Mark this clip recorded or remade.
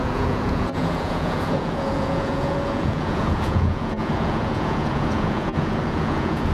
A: remade